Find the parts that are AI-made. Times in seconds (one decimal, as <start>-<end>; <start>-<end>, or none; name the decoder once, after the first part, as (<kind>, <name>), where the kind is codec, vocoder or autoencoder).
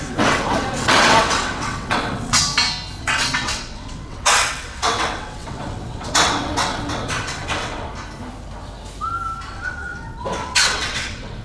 0.0-2.4 (vocoder, WaveNeXt); 3.0-7.9; 9.5-11.4